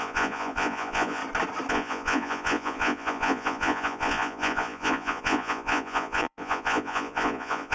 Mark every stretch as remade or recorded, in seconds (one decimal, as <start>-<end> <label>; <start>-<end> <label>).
0.0-1.2 remade; 1.2-1.7 recorded; 1.7-7.7 remade